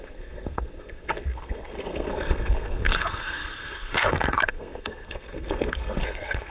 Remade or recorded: remade